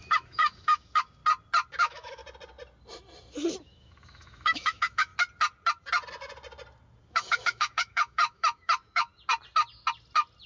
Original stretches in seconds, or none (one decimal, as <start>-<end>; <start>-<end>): 1.2-1.8; 2.2-3.6; 5.1-7.1; 9.1-10.5